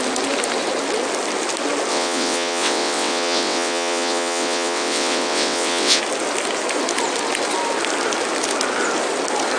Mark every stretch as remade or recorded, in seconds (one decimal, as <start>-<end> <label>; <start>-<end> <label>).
0.0-1.9 recorded; 1.9-6.0 remade; 6.0-9.6 recorded